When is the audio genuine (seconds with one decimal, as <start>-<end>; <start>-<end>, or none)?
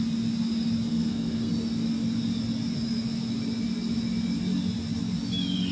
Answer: 0.0-0.9; 1.5-5.7